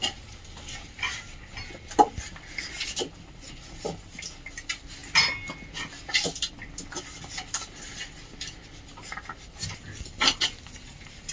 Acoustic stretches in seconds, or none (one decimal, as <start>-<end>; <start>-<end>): 0.0-11.3